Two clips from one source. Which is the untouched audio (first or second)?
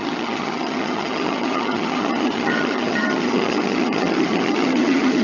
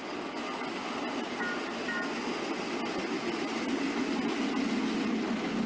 second